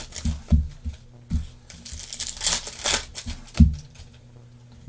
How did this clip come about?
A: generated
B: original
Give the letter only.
B